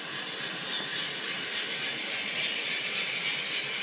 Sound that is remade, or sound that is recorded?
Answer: recorded